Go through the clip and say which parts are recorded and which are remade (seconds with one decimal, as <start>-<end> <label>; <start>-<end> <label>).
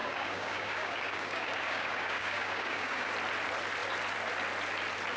0.0-3.1 remade; 3.1-5.2 recorded